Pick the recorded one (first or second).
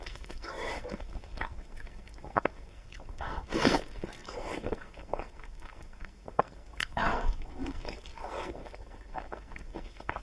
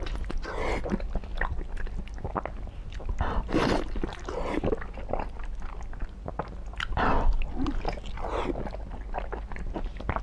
second